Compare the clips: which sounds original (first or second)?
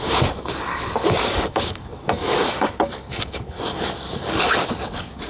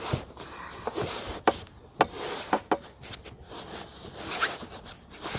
second